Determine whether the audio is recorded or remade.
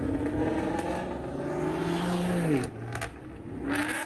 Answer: recorded